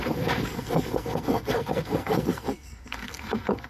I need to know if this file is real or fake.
fake